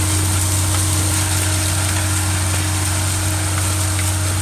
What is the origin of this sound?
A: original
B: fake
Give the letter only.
A